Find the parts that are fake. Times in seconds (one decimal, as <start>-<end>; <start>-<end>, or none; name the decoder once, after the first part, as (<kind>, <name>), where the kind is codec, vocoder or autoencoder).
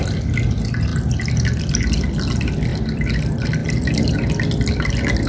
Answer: none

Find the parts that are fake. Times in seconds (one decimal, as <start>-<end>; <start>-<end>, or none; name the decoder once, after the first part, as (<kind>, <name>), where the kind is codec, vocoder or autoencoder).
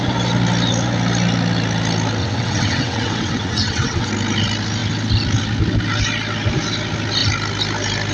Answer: 2.2-4.1 (vocoder, WaveNeXt)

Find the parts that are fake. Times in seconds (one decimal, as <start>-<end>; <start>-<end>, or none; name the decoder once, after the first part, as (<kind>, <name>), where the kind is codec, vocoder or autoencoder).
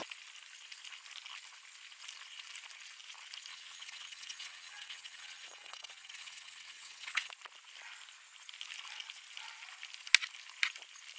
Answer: 3.5-7.3 (vocoder, WaveNeXt)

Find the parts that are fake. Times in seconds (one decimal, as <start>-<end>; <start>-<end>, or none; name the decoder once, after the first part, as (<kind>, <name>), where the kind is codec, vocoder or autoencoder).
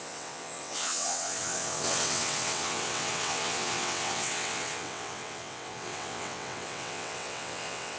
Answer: 0.0-8.0 (vocoder, WaveNeXt)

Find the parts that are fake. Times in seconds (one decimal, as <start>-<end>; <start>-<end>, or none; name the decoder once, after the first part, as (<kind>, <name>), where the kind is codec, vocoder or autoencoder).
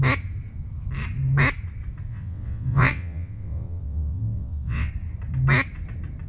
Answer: 2.1-4.9 (vocoder, WaveNeXt)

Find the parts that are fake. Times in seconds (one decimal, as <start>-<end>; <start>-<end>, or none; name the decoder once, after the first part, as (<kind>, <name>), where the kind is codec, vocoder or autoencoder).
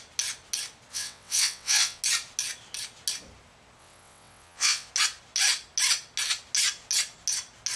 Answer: 0.9-2.0 (vocoder, WaveNeXt); 3.8-4.9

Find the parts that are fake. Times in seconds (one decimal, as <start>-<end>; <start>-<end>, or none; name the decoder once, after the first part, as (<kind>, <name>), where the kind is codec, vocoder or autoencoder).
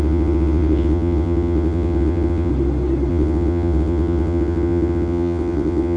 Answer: 0.0-2.5 (vocoder, WaveNeXt); 3.1-6.0